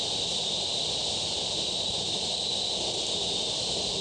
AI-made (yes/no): no